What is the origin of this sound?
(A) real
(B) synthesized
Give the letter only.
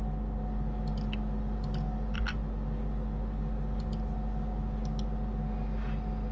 A